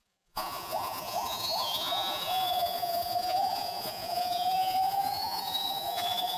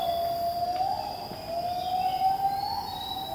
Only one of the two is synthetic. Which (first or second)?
first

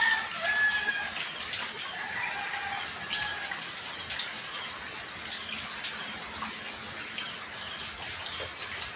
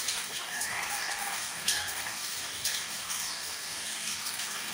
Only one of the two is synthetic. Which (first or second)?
second